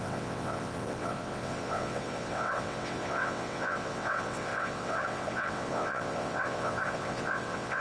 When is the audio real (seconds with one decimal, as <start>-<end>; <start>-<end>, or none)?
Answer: none